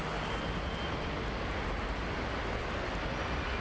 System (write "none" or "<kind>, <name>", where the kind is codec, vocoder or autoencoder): none